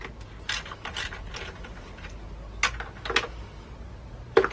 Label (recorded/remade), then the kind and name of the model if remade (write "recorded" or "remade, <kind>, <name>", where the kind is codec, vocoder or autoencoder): recorded